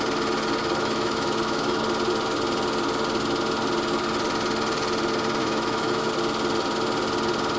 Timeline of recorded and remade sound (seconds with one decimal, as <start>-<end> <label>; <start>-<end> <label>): 0.0-0.6 recorded; 0.6-1.8 remade; 1.8-5.4 recorded; 5.4-6.1 remade; 6.1-7.6 recorded